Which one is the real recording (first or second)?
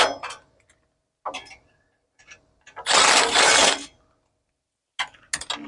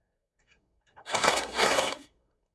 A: first